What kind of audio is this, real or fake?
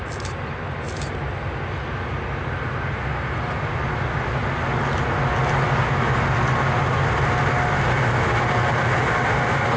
real